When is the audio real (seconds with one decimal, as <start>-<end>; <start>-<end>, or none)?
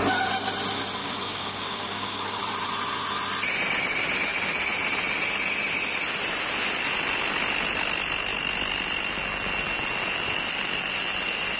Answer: 0.0-1.0; 2.4-11.6